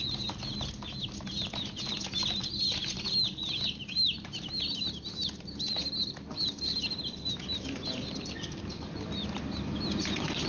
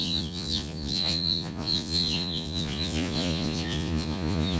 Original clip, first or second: first